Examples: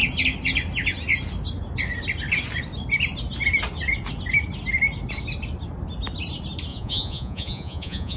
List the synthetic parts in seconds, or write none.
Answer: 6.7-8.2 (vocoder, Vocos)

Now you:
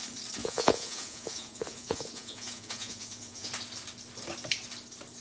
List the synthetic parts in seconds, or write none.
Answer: 0.4-3.5 (vocoder, Vocos)

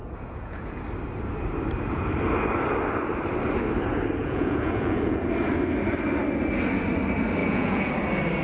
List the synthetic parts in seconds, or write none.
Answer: 0.0-0.8 (vocoder, Vocos); 4.2-5.2; 7.4-7.9

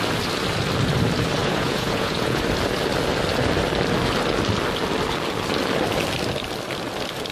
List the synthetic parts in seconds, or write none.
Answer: 1.4-2.4 (vocoder, Vocos)

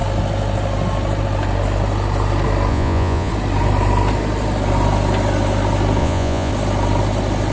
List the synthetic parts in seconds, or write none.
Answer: 2.7-3.3 (vocoder, Vocos); 6.0-6.5

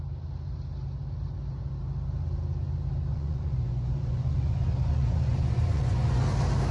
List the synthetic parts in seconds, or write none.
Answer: 3.1-6.2 (vocoder, Vocos)